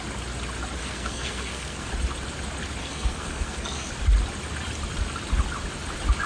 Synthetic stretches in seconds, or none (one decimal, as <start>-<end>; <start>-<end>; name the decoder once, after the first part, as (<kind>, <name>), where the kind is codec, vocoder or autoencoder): 0.8-1.9 (codec, SNAC); 2.8-3.9